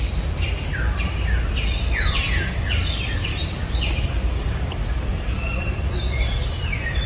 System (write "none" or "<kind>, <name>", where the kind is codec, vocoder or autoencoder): none